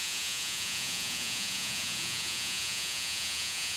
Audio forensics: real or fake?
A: fake